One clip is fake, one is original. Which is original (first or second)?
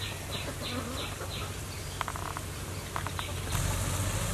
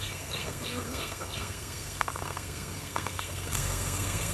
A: first